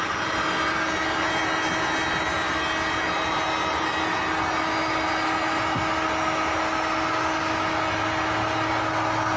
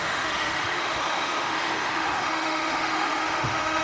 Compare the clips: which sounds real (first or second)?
first